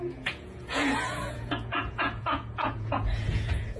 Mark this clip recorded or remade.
remade